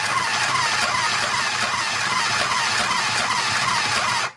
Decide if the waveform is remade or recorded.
recorded